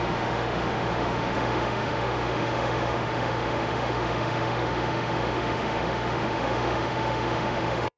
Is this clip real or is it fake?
fake